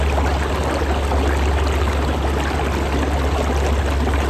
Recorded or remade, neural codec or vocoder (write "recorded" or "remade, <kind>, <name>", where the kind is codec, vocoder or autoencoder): recorded